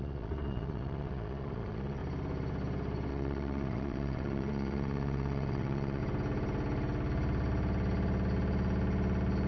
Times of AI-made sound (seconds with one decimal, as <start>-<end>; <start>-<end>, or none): 0.0-2.0; 3.1-6.0